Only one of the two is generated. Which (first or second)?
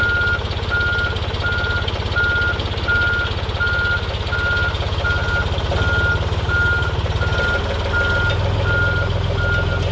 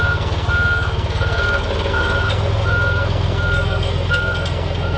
second